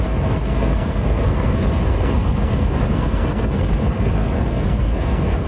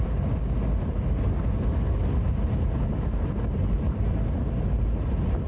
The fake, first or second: first